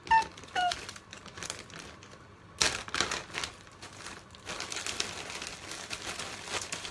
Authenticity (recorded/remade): recorded